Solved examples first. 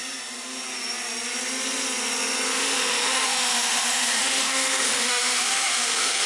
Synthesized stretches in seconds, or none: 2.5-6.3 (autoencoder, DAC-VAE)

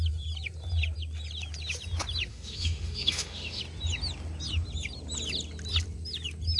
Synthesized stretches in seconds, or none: 2.3-3.6 (autoencoder, DAC-VAE)

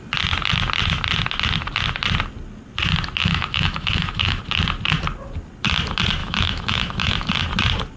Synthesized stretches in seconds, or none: 3.2-4.4 (autoencoder, DAC-VAE); 6.2-7.3